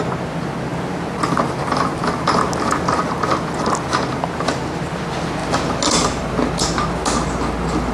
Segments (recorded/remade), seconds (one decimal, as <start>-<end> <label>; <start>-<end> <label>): 0.0-7.9 recorded